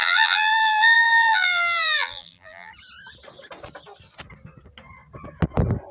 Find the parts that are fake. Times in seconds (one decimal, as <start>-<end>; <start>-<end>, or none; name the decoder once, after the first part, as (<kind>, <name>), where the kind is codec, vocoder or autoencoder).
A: 0.0-2.7 (vocoder, BigVGAN v2)